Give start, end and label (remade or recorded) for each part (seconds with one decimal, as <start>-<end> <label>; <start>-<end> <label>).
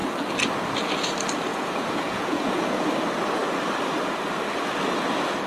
0.0-1.5 recorded; 1.5-2.8 remade; 2.8-5.5 recorded